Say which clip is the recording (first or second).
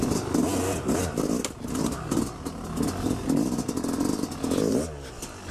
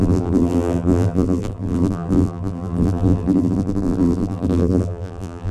first